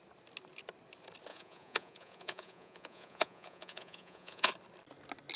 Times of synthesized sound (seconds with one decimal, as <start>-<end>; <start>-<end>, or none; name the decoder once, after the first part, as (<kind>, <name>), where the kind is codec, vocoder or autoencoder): 1.3-4.5 (vocoder, Vocos)